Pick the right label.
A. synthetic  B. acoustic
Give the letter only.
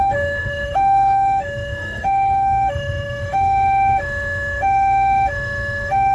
A